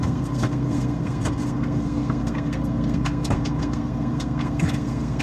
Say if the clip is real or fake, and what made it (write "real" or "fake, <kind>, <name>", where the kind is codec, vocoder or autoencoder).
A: fake, codec, SNAC